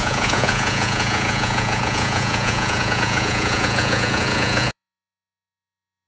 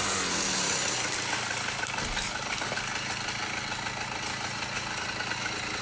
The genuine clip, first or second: second